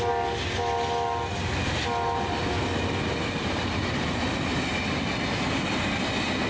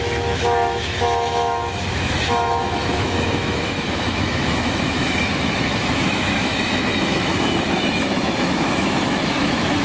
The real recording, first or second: first